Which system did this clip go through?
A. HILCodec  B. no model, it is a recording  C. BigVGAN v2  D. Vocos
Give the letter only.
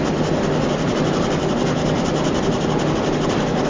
B